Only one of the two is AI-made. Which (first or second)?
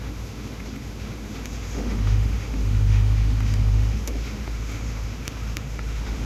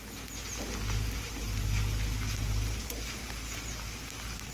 first